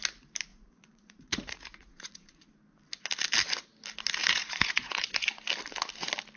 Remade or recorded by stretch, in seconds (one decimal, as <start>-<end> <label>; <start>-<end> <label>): 0.0-0.5 recorded; 0.5-2.5 remade; 2.5-4.2 recorded; 4.2-5.3 remade; 5.3-6.4 recorded